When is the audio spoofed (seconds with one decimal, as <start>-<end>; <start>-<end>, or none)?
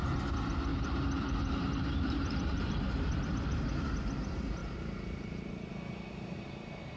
0.7-2.9; 4.6-5.7